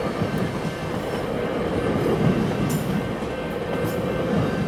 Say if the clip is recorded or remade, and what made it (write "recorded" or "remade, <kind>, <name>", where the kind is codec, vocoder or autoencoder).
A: recorded